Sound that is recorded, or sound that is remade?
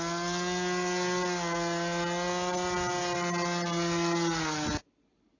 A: recorded